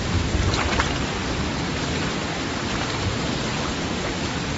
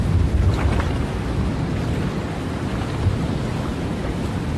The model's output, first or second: first